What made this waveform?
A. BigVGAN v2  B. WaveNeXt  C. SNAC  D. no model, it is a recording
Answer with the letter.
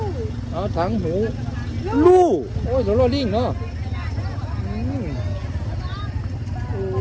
D